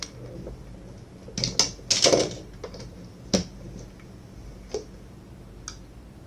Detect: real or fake real